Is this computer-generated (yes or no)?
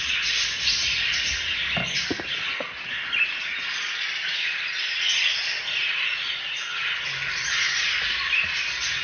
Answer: no